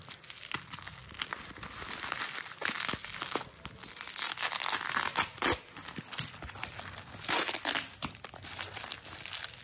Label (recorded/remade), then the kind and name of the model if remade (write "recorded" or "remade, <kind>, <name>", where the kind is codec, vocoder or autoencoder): recorded